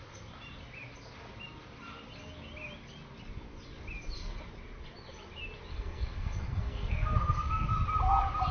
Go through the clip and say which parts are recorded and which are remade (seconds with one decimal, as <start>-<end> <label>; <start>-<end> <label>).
0.0-5.7 recorded; 5.7-7.7 remade; 7.7-8.5 recorded